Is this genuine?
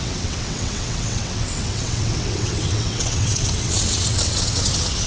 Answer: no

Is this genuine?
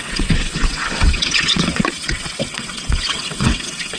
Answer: no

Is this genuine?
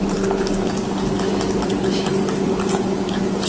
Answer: yes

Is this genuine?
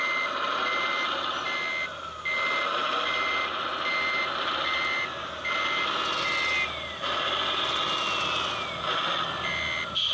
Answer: yes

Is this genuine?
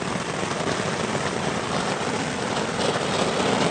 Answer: yes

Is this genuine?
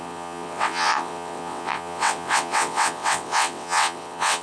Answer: no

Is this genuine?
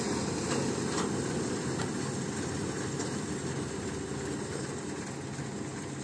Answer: yes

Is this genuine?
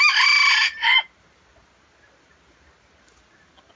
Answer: yes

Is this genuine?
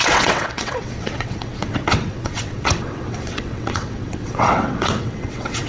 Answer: no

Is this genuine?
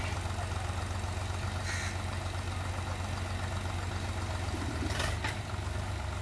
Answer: yes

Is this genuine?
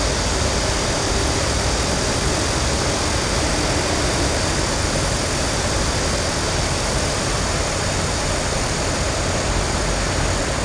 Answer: yes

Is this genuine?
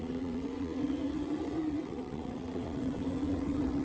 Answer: no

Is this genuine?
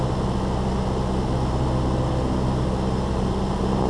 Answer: yes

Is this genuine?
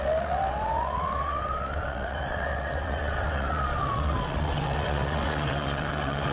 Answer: no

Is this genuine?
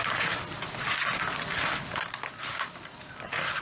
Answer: yes